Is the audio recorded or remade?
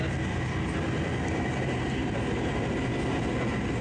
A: recorded